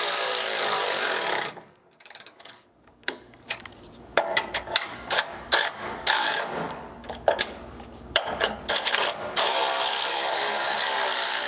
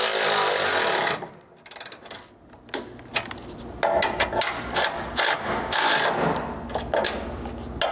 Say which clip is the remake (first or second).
first